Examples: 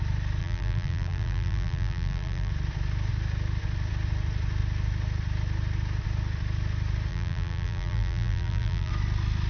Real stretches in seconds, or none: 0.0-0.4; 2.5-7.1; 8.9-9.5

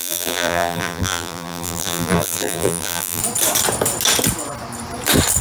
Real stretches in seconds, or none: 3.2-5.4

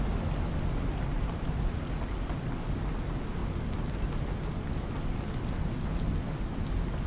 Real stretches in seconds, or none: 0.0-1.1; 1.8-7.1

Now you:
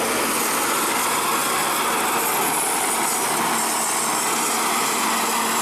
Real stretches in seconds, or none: 0.0-5.6

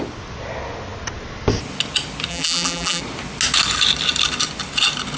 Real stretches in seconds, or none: 0.0-2.3; 3.0-5.2

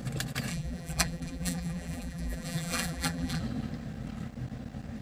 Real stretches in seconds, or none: 0.0-0.5; 3.4-5.0